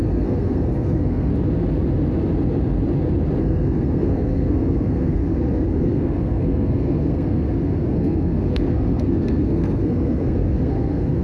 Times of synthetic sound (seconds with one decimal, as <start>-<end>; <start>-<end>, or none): 0.0-1.3; 3.4-11.2